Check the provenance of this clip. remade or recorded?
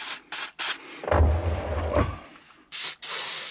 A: recorded